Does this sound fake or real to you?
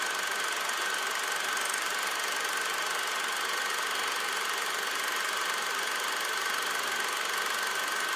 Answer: real